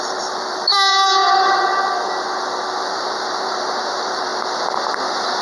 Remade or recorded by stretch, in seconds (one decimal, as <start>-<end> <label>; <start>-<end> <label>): 0.0-1.2 remade; 1.2-2.8 recorded; 2.8-4.3 remade; 4.3-5.4 recorded